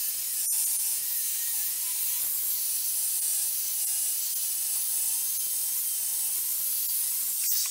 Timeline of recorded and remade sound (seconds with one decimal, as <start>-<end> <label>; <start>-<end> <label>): 0.0-0.7 recorded; 0.7-2.0 remade; 2.0-5.2 recorded; 5.2-5.8 remade; 5.8-7.7 recorded

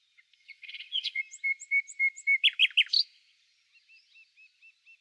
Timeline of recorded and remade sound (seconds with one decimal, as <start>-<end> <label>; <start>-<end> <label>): 0.0-0.4 recorded; 0.4-1.2 remade; 1.2-5.0 recorded

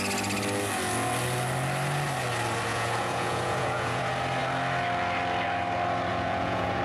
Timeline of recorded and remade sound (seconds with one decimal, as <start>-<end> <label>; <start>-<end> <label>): 0.0-2.7 recorded; 2.7-4.0 remade; 4.0-6.1 recorded; 6.1-6.8 remade

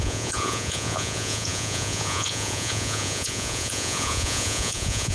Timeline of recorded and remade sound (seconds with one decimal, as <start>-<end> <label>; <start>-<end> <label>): 0.0-5.1 remade

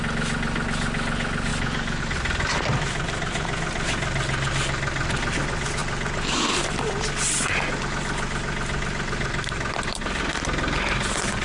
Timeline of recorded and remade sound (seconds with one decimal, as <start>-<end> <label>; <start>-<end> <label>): 0.0-11.4 recorded

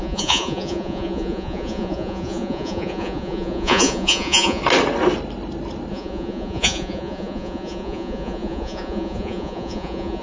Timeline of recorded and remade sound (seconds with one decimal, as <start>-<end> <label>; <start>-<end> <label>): 0.0-4.6 remade; 4.6-5.9 recorded; 5.9-10.2 remade

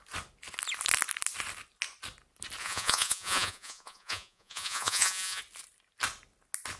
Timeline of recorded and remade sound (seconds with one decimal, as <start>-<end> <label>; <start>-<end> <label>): 0.0-2.6 recorded; 2.6-5.4 remade; 5.4-6.8 recorded